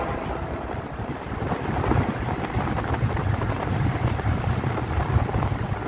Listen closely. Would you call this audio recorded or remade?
recorded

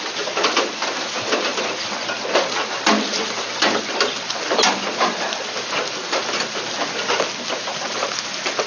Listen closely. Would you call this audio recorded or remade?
recorded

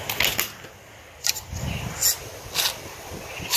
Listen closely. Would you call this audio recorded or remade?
recorded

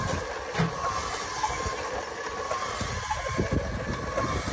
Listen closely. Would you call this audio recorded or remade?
recorded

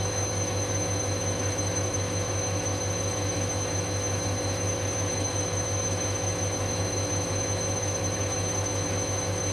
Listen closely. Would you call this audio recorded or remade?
remade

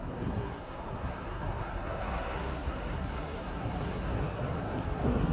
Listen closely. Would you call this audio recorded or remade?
remade